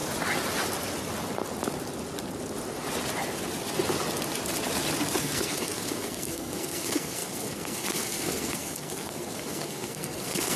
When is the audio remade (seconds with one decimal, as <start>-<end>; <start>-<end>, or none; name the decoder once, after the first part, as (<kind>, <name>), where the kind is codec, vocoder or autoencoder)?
5.2-10.6 (codec, SNAC)

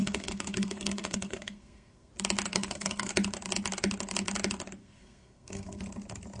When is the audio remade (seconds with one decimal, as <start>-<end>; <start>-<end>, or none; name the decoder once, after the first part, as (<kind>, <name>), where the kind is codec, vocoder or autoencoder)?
0.0-2.1 (codec, SNAC); 2.5-3.1; 4.8-5.8